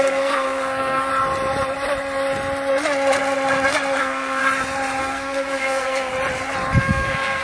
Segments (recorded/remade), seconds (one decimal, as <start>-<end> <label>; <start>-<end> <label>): 0.0-1.1 remade; 1.1-4.0 recorded; 4.0-4.4 remade; 4.4-5.0 recorded; 5.0-6.1 remade; 6.1-6.8 recorded; 6.8-7.4 remade